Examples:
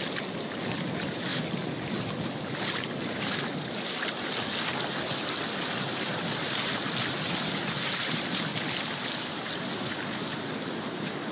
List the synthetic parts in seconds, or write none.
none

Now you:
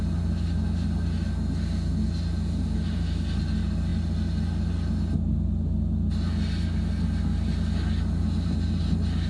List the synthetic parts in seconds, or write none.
none

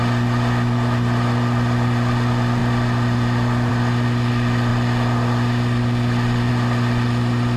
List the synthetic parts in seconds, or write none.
none

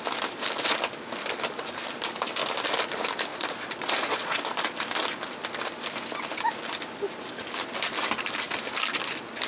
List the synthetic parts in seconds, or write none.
3.3-4.6

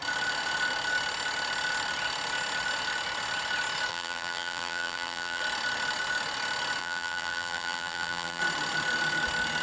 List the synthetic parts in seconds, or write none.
3.9-5.4; 6.8-8.4

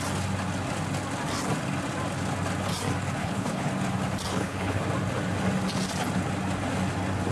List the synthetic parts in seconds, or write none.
3.2-3.7; 4.3-4.8

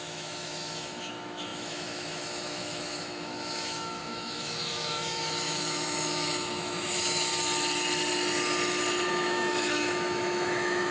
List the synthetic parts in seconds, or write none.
0.0-7.3; 9.1-10.9

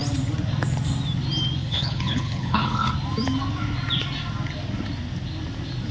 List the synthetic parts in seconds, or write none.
1.6-2.9